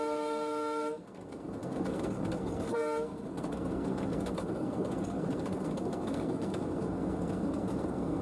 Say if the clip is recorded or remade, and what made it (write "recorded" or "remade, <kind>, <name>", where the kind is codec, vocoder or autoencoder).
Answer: remade, codec, SNAC